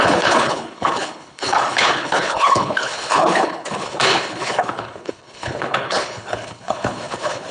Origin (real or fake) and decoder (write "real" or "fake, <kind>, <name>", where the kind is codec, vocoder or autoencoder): fake, codec, HILCodec